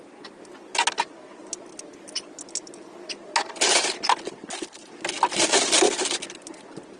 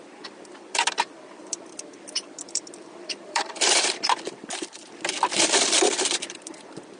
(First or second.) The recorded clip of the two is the first